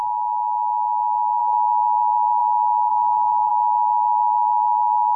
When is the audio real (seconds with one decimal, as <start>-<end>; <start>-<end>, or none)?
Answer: 0.0-2.9; 3.5-5.2